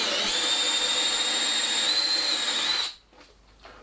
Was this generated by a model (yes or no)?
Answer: no